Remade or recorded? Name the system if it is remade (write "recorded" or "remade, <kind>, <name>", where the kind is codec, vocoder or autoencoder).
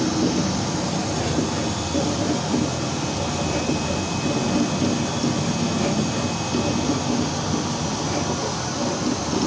recorded